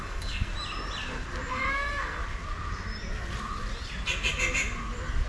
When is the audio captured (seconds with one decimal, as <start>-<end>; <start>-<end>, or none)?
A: 0.5-1.5; 2.2-5.3